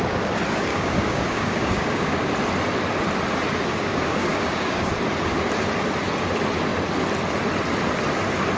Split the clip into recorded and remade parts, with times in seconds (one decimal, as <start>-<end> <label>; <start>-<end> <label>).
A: 0.0-0.7 recorded; 0.7-2.3 remade; 2.3-3.7 recorded; 3.7-4.9 remade; 4.9-8.6 recorded